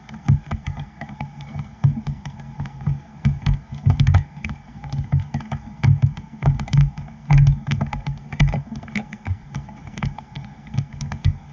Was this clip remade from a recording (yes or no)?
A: yes